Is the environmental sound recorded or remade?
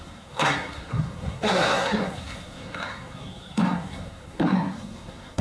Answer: remade